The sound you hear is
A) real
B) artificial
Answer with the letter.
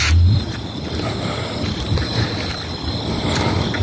A